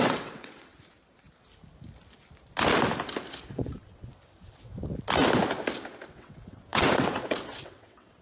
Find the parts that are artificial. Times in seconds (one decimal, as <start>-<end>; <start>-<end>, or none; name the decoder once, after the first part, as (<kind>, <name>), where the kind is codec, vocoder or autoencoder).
0.0-0.7 (vocoder, WaveNeXt); 3.5-4.7; 6.1-8.2